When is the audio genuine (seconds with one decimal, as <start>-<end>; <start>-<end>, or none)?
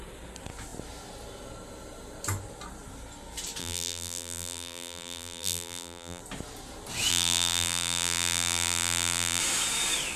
0.0-3.6; 6.2-7.1; 9.4-10.2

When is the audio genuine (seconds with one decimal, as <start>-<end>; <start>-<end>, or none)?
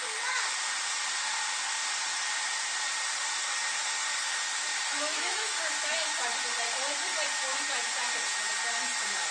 0.0-4.7; 5.6-9.3